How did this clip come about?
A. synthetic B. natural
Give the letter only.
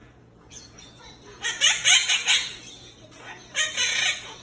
A